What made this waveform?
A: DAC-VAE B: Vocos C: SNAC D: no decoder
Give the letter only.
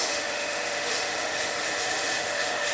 A